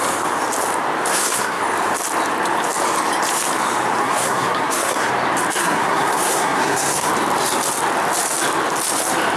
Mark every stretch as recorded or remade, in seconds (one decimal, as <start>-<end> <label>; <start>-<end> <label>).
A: 0.0-1.1 recorded; 1.1-1.6 remade; 1.6-4.0 recorded; 4.0-5.1 remade; 5.1-5.6 recorded; 5.6-7.1 remade; 7.1-9.4 recorded